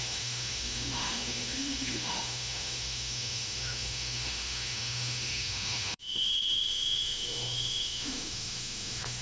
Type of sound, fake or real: fake